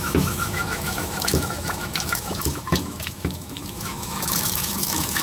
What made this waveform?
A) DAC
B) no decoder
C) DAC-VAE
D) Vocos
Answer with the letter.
C